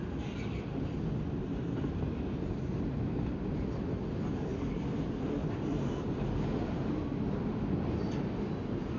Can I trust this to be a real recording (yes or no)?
yes